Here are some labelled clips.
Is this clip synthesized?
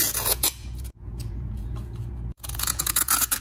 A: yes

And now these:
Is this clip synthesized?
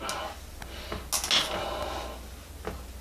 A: no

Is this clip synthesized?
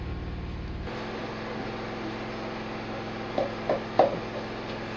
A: no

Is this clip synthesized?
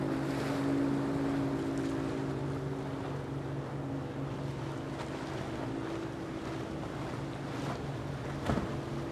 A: no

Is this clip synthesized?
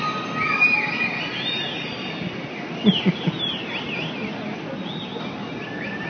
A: no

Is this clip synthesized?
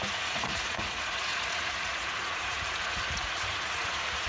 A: yes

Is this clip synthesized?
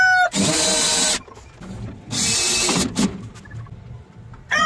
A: no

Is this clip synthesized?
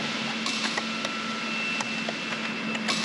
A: no